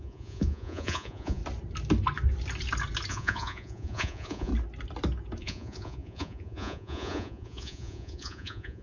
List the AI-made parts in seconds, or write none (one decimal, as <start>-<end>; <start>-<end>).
0.0-1.4; 3.1-4.5; 5.4-8.8